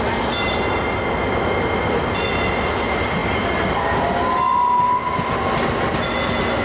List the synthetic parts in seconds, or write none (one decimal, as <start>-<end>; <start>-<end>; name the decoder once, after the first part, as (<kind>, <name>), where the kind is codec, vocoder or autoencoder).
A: none